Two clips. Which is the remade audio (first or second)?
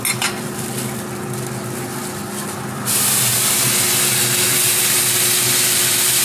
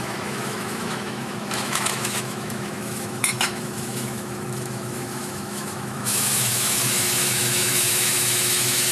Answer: second